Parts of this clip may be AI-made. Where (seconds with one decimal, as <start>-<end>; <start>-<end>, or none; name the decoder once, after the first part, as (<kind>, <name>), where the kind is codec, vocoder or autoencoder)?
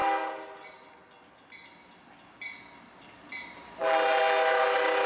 none